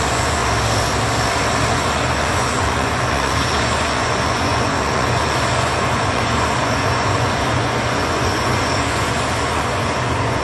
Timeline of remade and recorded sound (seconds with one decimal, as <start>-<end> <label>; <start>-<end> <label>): 0.0-0.4 remade; 0.4-1.7 recorded; 1.7-10.4 remade